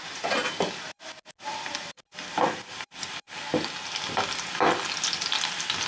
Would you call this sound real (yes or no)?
yes